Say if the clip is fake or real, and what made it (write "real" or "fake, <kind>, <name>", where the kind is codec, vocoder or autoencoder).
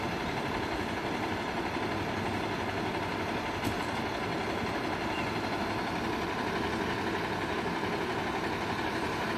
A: real